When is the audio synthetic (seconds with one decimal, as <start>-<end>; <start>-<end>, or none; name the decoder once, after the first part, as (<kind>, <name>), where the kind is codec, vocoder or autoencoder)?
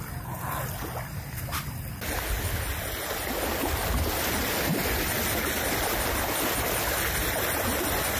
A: none